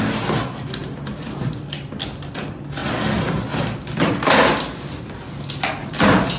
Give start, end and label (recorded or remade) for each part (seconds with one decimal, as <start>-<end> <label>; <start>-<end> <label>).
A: 0.0-0.8 recorded; 0.8-1.6 remade; 1.6-5.8 recorded; 5.8-6.4 remade

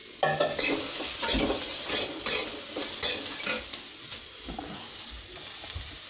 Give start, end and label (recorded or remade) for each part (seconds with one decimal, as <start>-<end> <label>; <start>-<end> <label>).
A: 0.0-6.1 recorded

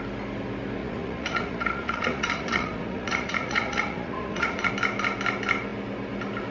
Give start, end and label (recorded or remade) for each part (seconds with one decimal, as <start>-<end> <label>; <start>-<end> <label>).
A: 0.0-0.8 recorded; 0.8-4.7 remade; 4.7-6.5 recorded

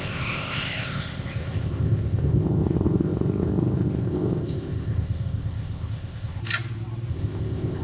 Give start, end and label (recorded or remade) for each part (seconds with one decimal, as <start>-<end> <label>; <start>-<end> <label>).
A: 0.0-6.4 remade; 6.4-7.1 recorded; 7.1-7.8 remade